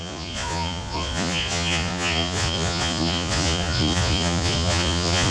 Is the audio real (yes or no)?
no